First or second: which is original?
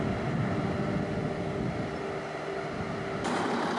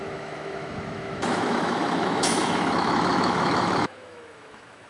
first